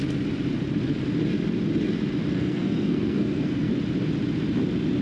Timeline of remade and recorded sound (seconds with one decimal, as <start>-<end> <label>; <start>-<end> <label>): 0.0-2.3 recorded; 2.3-3.7 remade; 3.7-5.0 recorded